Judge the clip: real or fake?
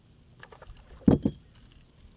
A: real